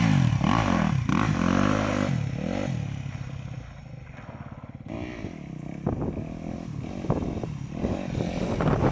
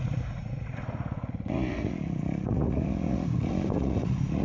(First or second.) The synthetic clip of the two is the second